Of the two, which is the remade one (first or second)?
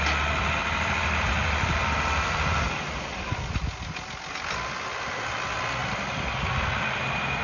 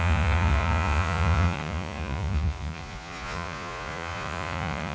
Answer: second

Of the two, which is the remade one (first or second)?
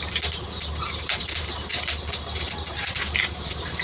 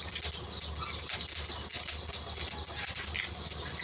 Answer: first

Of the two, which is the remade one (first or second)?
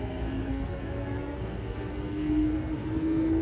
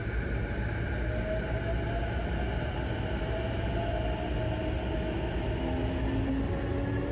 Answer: first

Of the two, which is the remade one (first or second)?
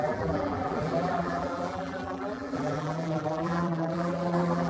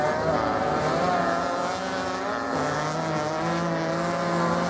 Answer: first